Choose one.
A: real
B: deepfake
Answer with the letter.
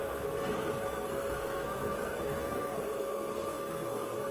B